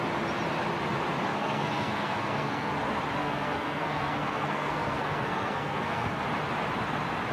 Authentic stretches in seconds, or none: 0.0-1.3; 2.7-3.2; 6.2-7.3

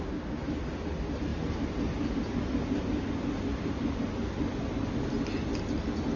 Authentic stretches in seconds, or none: 0.0-6.2

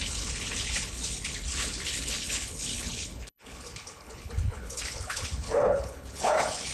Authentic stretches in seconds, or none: none

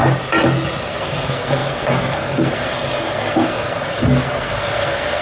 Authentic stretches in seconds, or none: 0.0-0.8

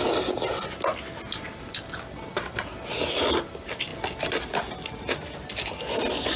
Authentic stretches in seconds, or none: 0.0-6.4

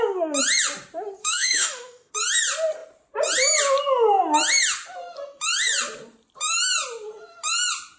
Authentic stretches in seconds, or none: 0.0-1.2; 2.1-8.0

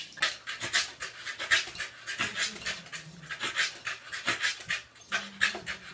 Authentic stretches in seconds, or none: 0.0-5.9

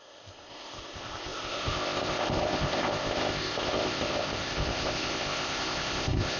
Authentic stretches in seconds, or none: none